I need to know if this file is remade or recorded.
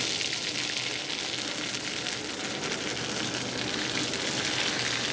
recorded